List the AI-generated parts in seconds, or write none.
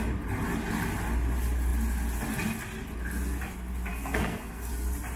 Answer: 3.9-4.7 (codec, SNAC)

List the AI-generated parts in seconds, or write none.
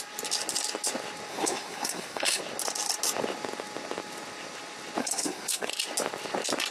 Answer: 1.3-2.4 (codec, SNAC); 5.0-5.7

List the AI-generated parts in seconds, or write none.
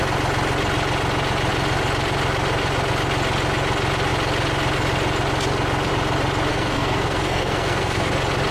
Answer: 6.5-8.1 (codec, SNAC)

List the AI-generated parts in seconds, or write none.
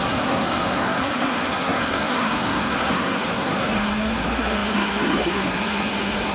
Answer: 0.0-6.3 (codec, SNAC)